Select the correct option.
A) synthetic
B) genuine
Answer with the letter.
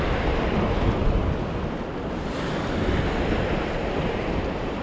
B